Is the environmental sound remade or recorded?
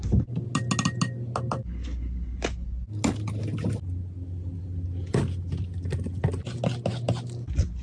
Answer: recorded